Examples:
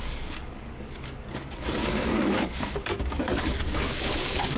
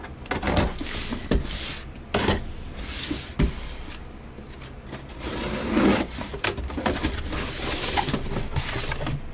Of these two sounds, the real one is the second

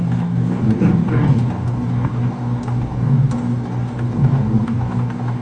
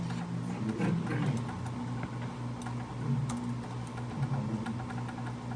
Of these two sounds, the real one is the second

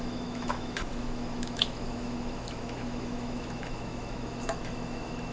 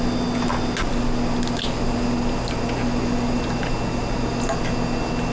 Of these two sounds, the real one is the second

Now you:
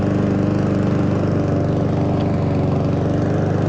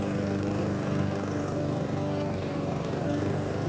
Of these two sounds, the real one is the first